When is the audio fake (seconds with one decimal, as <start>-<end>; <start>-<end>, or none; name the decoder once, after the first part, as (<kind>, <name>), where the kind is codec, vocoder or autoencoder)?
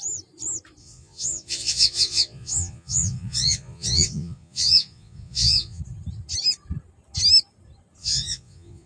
0.8-5.8 (vocoder, Vocos); 8.0-8.9